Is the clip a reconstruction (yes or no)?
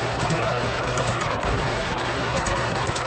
yes